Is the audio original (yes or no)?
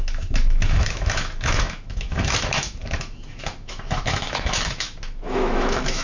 no